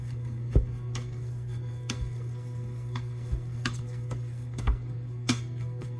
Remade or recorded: remade